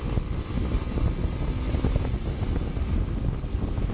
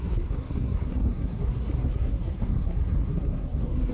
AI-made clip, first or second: second